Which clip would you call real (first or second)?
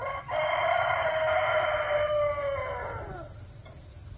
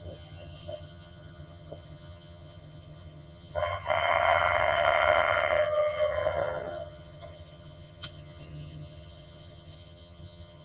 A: first